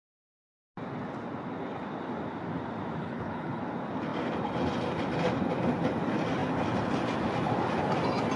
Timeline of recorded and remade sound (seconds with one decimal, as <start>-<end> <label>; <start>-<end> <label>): 0.0-3.0 recorded; 3.0-3.6 remade; 3.6-8.4 recorded